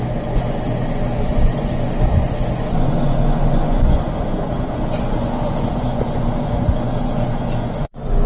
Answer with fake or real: fake